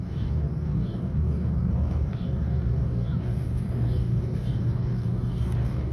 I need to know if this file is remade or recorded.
remade